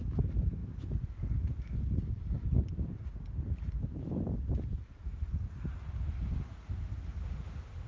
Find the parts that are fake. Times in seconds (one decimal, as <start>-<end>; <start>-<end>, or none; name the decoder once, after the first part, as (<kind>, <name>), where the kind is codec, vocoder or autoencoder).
7.2-7.9 (autoencoder, DAC-VAE)